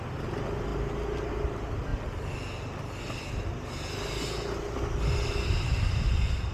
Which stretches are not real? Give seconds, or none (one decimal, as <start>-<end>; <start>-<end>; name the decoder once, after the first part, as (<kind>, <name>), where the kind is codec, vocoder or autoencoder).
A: none

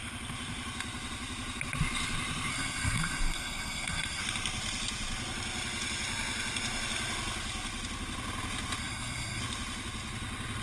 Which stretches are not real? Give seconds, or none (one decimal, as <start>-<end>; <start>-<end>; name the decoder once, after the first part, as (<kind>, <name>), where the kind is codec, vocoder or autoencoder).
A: 2.5-4.2 (codec, SNAC); 8.8-9.4

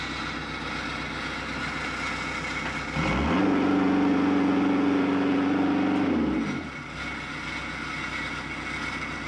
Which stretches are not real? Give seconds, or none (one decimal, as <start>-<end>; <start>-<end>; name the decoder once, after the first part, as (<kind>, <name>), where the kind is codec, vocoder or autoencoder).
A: 3.4-5.7 (vocoder, Vocos)

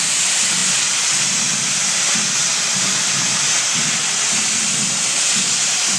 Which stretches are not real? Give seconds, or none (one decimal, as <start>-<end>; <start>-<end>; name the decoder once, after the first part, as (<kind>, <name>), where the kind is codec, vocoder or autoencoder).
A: none

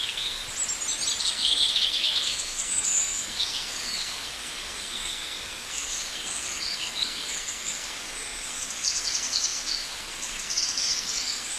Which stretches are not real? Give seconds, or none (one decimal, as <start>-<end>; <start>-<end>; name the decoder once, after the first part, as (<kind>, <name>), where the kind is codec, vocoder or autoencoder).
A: 0.0-0.4 (codec, SNAC); 1.2-11.6

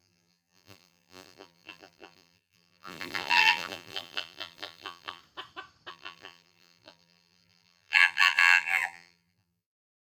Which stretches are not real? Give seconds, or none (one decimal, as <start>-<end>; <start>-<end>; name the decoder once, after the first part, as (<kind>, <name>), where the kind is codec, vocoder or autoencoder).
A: 0.0-5.2 (vocoder, BigVGAN v2); 5.9-10.0

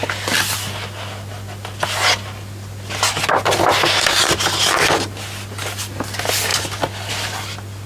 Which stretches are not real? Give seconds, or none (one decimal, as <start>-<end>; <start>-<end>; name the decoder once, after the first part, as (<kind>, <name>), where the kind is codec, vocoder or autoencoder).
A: none

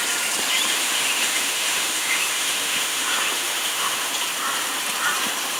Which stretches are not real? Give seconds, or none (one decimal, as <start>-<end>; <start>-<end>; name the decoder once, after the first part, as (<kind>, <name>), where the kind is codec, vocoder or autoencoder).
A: 0.7-4.1 (autoencoder, DAC-VAE)